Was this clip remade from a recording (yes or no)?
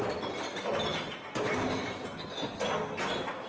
no